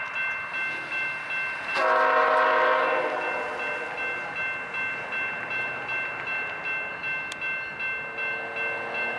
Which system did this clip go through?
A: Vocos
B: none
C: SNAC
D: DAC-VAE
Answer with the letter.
B